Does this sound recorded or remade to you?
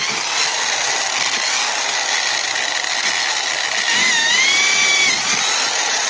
recorded